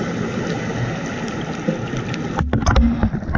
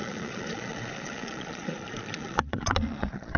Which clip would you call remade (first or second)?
second